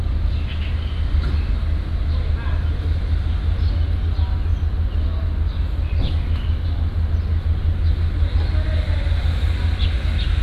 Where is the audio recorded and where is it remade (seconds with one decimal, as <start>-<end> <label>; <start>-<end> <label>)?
0.0-10.4 recorded